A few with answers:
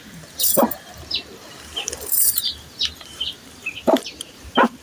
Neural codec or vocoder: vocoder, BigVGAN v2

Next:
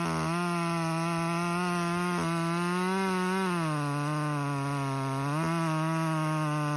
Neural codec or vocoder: none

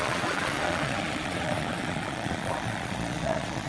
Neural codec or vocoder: vocoder, Vocos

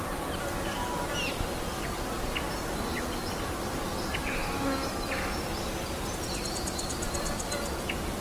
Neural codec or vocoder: none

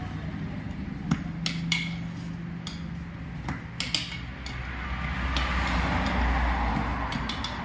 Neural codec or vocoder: none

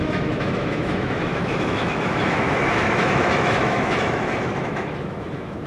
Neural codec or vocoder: autoencoder, DAC-VAE